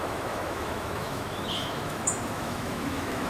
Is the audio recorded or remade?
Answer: remade